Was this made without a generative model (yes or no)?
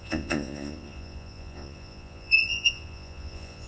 no